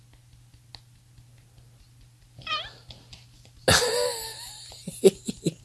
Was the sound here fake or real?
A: real